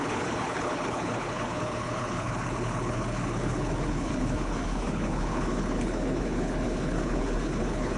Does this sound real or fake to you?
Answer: fake